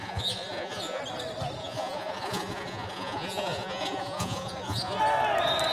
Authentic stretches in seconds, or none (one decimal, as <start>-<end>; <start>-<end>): 1.0-1.6; 5.0-5.7